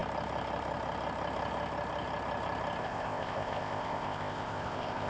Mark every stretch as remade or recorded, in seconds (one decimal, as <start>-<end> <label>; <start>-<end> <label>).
0.0-2.8 recorded; 2.8-5.1 remade